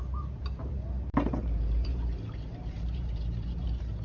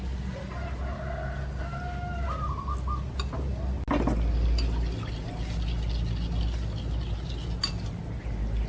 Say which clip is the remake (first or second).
first